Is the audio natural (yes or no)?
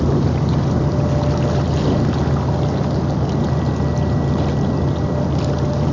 yes